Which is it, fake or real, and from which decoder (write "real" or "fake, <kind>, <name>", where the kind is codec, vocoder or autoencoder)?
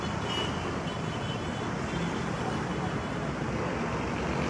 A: real